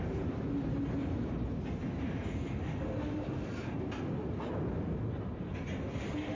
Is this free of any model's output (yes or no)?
yes